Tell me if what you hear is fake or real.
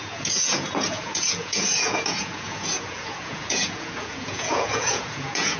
fake